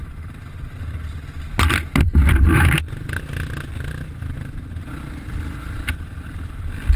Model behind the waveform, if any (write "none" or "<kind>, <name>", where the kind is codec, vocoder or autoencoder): none